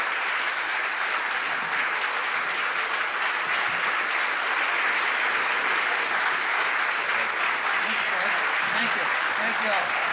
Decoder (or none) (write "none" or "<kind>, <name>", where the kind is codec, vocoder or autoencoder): none